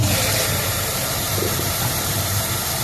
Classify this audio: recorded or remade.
remade